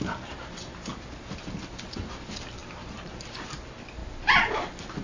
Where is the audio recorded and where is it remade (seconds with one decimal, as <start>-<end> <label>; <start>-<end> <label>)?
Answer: 0.0-5.0 recorded